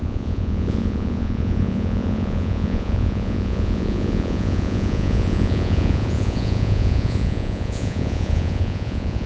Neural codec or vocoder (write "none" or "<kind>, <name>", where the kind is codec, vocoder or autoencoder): vocoder, Vocos